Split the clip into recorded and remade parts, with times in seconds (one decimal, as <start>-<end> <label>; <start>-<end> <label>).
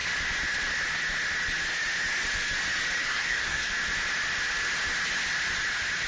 0.0-3.0 recorded; 3.0-3.7 remade; 3.7-6.1 recorded